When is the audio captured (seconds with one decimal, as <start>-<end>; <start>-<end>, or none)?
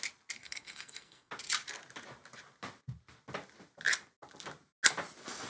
0.0-0.4; 1.3-5.5